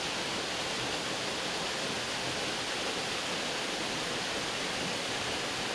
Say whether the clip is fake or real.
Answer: real